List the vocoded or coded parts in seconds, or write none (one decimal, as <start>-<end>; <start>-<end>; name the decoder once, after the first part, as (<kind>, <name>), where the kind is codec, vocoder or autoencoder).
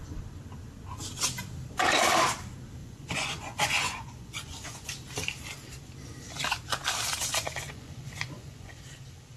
2.8-4.9 (vocoder, Vocos); 7.3-8.8